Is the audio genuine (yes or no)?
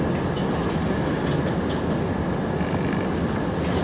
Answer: yes